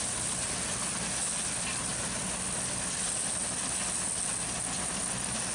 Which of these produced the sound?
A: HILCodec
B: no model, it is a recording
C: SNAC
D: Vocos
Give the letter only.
B